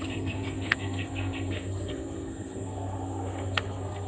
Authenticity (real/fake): fake